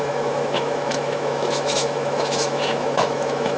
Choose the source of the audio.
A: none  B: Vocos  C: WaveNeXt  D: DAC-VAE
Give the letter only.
D